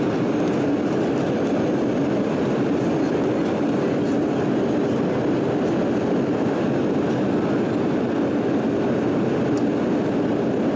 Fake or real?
real